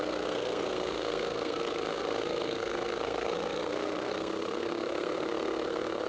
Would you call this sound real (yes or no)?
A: no